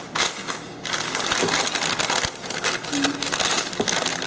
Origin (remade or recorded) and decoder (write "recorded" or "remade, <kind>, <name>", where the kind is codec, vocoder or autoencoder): recorded